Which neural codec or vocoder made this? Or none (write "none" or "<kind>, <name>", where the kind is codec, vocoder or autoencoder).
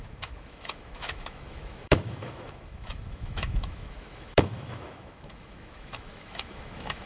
autoencoder, DAC-VAE